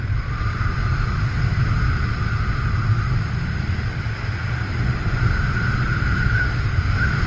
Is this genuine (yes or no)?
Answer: yes